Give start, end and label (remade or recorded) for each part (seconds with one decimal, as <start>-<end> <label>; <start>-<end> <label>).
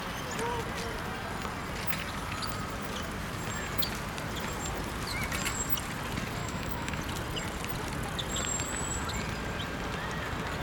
0.0-6.4 recorded; 6.4-7.0 remade; 7.0-10.6 recorded